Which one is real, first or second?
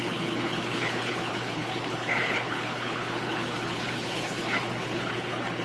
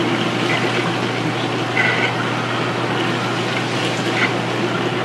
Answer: second